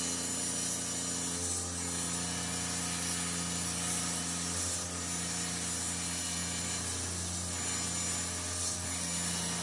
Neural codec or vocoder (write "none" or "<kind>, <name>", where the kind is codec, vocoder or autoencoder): none